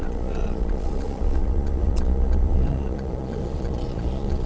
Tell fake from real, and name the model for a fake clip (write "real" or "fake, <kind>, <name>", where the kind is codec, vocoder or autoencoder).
fake, vocoder, Vocos